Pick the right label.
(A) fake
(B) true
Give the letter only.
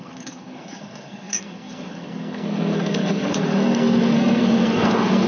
A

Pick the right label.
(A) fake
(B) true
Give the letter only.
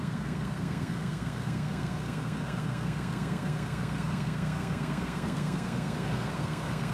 A